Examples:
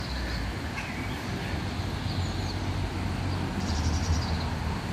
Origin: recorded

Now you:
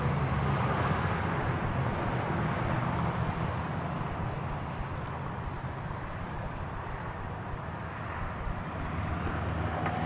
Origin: remade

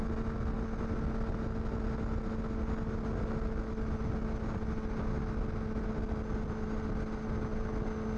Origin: recorded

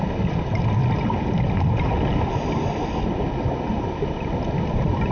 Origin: recorded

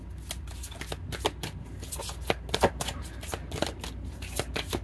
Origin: recorded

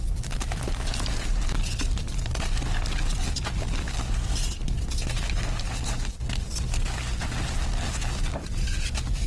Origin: recorded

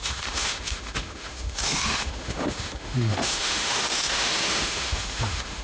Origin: remade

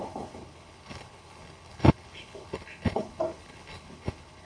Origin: remade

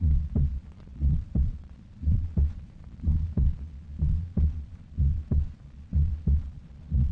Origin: remade